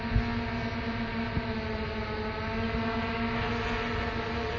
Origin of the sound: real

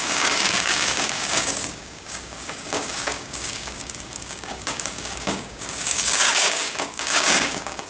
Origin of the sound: fake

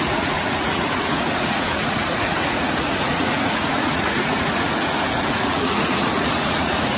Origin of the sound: fake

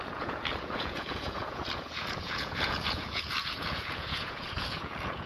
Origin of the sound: fake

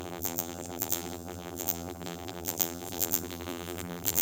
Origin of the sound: fake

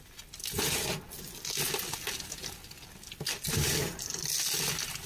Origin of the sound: real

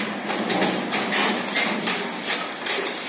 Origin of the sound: real